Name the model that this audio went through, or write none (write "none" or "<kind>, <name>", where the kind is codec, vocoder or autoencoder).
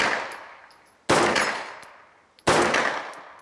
none